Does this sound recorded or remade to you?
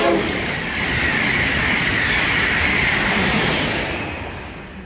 remade